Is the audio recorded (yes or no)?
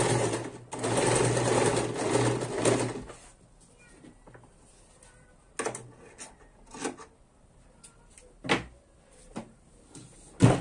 yes